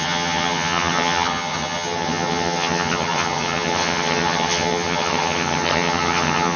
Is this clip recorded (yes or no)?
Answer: no